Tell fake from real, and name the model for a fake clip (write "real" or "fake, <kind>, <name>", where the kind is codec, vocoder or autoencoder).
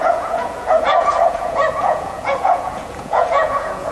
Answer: fake, vocoder, Vocos